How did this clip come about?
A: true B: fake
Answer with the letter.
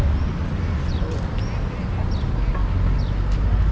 A